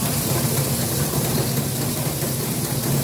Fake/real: fake